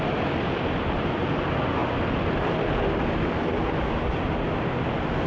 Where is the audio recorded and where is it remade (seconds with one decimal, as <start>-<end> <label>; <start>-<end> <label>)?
0.0-5.3 recorded